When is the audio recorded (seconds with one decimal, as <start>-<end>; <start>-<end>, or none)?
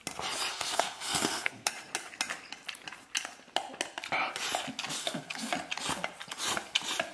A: 0.0-0.5; 1.7-5.0; 5.5-7.1